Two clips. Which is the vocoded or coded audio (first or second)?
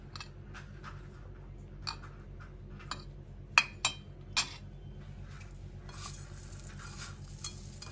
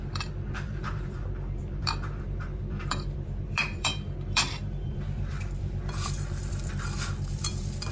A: second